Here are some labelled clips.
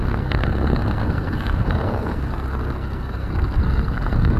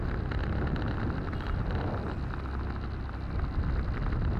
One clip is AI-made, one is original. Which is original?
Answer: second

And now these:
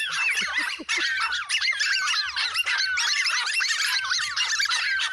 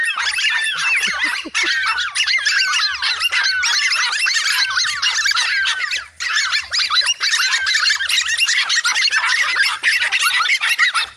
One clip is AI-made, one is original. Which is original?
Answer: second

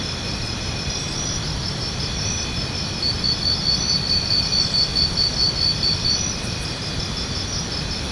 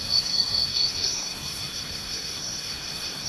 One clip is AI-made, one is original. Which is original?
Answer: first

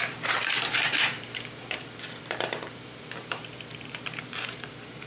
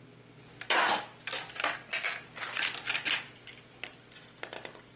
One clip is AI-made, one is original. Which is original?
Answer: second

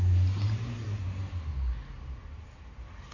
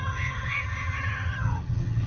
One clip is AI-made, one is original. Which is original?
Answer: first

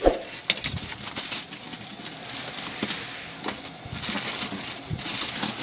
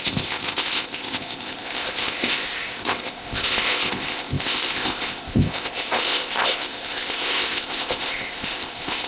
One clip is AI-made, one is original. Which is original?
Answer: first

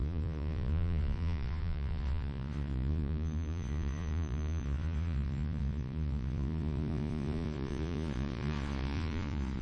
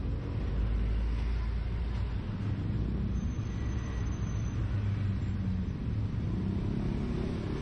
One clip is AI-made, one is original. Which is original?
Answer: second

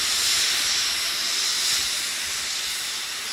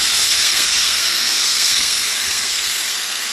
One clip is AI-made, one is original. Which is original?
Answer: first